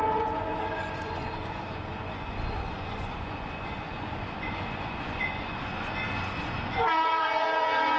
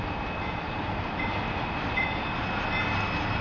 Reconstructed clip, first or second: first